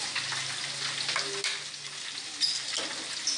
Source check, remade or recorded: recorded